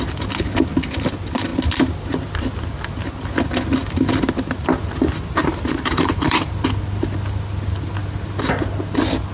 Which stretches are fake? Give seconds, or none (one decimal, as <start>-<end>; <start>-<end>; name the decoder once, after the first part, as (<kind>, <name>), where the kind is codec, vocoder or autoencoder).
5.4-6.5 (vocoder, BigVGAN v2)